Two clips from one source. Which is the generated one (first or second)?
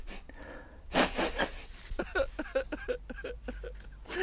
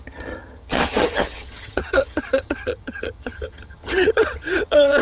second